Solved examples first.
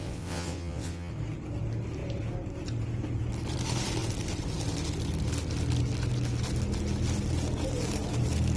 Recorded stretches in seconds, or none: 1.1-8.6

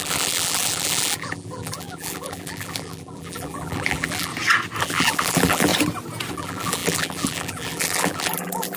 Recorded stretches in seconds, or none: 4.3-4.8; 5.7-6.3